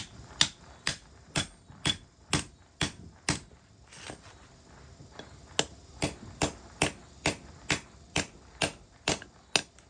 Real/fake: real